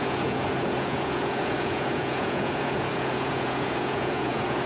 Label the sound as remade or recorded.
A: remade